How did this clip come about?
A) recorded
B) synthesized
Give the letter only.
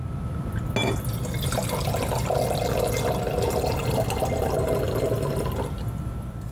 A